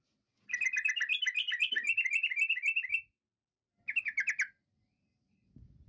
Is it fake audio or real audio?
real